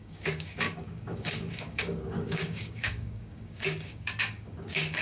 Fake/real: fake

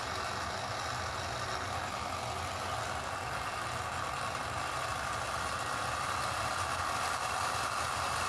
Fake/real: real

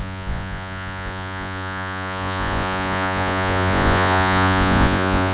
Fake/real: fake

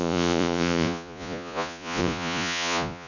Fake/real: fake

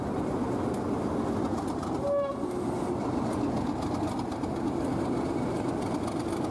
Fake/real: real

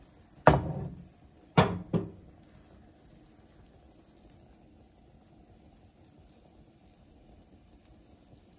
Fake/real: real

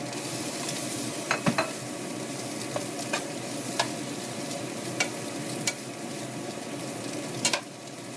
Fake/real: real